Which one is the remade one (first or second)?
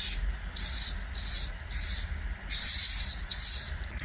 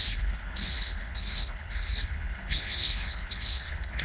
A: second